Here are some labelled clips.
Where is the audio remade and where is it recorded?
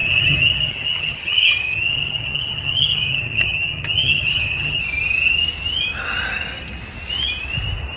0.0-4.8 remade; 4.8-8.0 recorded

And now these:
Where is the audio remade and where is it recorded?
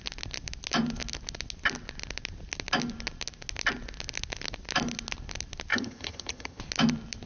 0.0-5.7 recorded; 5.7-6.6 remade; 6.6-7.3 recorded